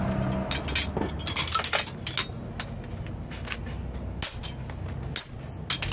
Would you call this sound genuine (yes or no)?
yes